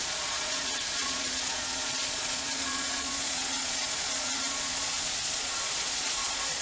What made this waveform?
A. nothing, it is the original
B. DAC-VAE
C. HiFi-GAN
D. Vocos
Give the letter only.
D